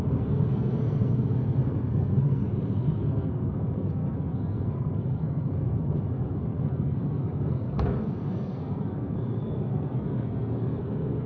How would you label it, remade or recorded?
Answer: remade